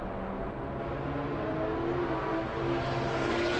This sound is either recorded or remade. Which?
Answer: recorded